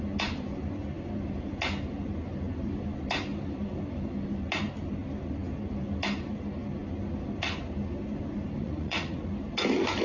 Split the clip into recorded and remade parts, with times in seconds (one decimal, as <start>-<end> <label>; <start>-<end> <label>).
0.0-8.6 recorded; 8.6-9.3 remade; 9.3-10.0 recorded